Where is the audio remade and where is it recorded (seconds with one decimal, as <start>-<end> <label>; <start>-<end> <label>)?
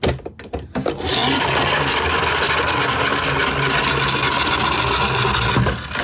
0.0-1.2 recorded; 1.2-2.7 remade; 2.7-6.0 recorded